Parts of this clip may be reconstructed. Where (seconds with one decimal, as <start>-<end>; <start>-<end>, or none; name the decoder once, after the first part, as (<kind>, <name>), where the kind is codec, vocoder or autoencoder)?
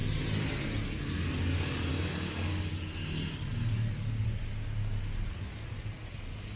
1.9-2.7 (codec, DAC)